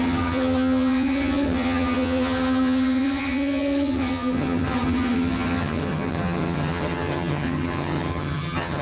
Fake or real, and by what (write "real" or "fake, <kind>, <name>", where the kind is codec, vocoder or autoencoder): fake, vocoder, HiFi-GAN